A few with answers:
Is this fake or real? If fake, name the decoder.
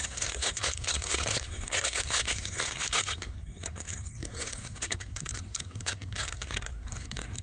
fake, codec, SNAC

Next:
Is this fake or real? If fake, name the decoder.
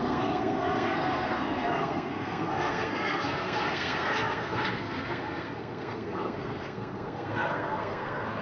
fake, codec, SNAC